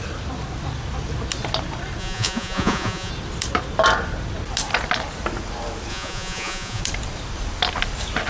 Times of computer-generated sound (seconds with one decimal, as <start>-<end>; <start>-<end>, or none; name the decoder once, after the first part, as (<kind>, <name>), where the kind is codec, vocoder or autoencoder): 2.0-3.1 (vocoder, Vocos); 5.9-6.8